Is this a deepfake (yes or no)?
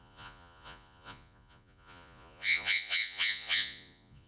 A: yes